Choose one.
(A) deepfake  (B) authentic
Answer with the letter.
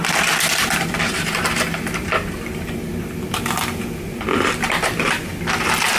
B